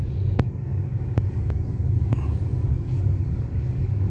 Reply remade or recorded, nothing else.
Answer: remade